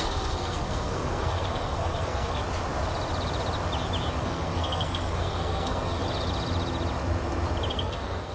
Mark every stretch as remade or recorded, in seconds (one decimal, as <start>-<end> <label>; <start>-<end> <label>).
0.0-2.4 remade; 2.4-4.2 recorded; 4.2-6.0 remade; 6.0-7.7 recorded; 7.7-8.3 remade